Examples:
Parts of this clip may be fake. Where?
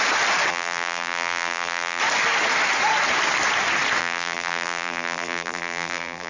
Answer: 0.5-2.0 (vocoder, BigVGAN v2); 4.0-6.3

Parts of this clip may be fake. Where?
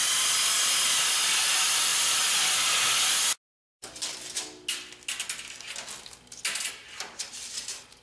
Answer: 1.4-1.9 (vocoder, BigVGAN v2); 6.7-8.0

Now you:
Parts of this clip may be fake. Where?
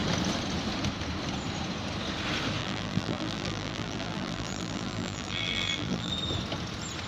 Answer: 2.6-6.1 (vocoder, BigVGAN v2)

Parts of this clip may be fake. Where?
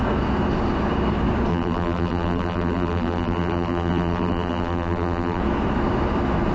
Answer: 1.5-5.4 (vocoder, BigVGAN v2)